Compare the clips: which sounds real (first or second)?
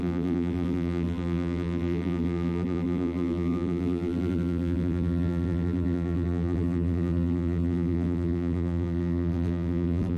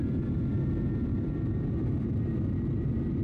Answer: second